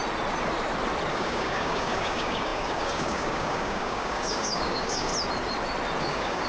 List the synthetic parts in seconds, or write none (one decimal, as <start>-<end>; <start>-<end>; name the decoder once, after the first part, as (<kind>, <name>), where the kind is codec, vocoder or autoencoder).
1.1-5.1 (codec, DAC); 6.0-6.5